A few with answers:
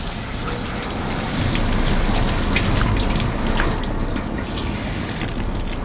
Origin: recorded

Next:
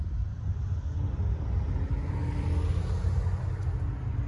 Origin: recorded